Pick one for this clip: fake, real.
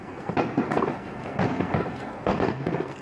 fake